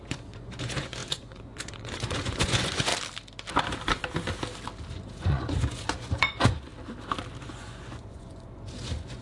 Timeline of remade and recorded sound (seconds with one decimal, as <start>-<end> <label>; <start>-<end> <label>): 0.0-2.9 remade; 2.9-4.9 recorded; 4.9-6.7 remade; 6.7-7.4 recorded; 7.4-9.2 remade